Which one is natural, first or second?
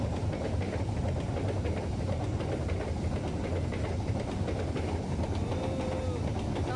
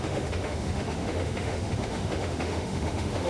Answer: first